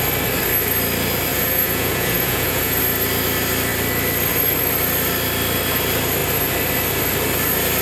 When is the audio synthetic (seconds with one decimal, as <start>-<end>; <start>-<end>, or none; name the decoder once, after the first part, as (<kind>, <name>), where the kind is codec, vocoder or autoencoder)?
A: 1.3-2.8 (vocoder, Vocos)